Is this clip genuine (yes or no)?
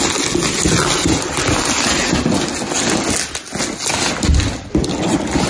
yes